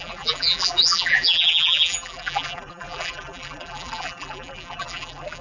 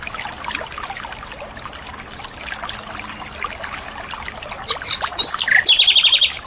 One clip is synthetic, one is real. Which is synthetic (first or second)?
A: first